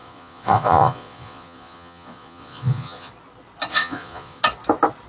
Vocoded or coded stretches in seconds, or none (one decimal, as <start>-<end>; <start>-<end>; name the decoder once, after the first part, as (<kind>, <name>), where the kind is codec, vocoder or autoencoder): 0.0-3.1 (vocoder, Vocos); 3.7-4.4